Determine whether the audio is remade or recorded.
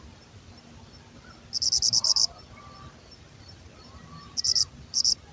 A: recorded